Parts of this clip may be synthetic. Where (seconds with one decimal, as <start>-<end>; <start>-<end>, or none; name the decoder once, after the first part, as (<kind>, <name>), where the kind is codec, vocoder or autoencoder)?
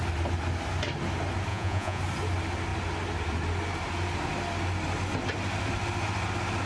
1.5-2.0 (vocoder, Vocos)